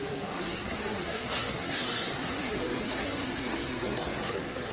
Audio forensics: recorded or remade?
remade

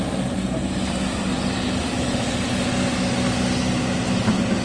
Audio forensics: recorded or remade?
recorded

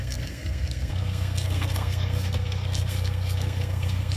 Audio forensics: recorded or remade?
remade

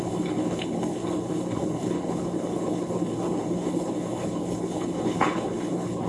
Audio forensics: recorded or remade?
remade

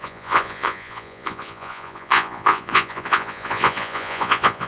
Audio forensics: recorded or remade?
remade